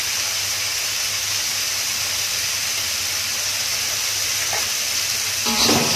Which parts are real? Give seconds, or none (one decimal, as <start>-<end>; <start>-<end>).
0.0-6.0